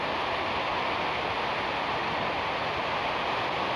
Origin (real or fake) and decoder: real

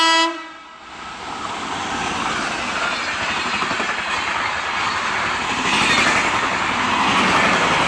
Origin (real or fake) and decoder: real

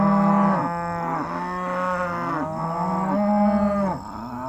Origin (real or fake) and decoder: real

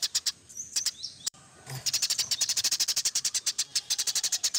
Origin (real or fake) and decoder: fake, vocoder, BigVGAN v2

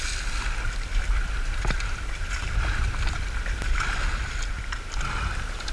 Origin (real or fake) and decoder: real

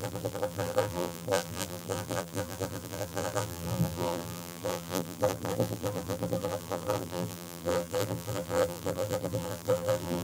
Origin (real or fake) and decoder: fake, vocoder, BigVGAN v2